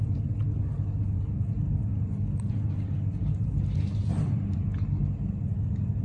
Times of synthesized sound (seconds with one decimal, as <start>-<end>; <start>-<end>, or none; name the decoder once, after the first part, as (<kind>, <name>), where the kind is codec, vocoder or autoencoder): none